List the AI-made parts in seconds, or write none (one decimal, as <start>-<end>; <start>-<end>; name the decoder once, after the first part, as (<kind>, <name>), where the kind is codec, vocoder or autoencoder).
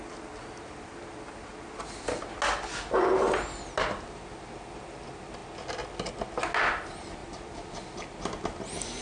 7.2-7.7 (vocoder, BigVGAN v2)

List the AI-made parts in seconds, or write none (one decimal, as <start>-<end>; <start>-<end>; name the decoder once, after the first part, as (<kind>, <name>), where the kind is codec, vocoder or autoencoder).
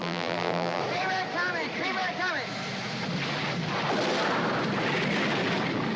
0.0-0.8 (vocoder, BigVGAN v2)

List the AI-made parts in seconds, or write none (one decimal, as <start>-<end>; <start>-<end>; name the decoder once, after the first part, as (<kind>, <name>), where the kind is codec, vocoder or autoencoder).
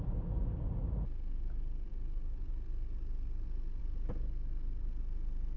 none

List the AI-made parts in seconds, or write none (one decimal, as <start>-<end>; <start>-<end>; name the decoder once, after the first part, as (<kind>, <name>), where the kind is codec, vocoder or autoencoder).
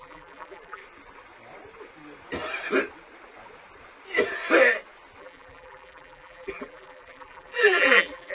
0.0-0.8 (vocoder, BigVGAN v2); 5.2-8.3